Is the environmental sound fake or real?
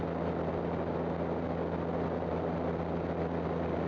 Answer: real